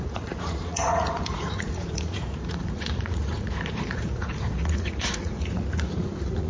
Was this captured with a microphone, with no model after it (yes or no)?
no